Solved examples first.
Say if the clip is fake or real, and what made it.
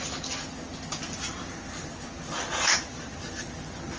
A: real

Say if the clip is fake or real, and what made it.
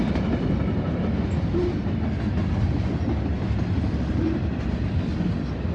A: real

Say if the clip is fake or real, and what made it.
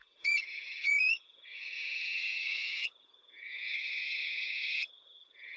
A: fake, vocoder, Vocos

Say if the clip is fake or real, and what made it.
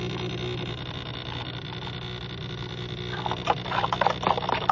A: real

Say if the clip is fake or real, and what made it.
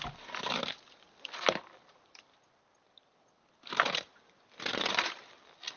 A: real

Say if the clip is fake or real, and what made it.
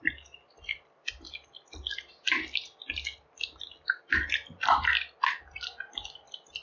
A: real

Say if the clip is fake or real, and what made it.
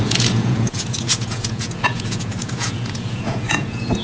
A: fake, vocoder, Vocos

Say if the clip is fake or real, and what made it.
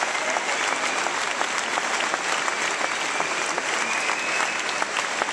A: real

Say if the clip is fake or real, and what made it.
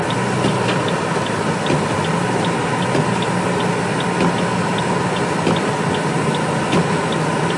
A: real